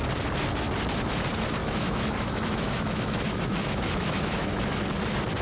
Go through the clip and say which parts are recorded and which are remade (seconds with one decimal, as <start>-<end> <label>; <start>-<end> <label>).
0.0-1.6 recorded; 1.6-4.8 remade; 4.8-5.4 recorded